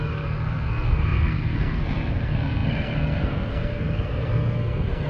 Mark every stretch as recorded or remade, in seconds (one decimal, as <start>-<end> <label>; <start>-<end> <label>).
0.0-5.1 remade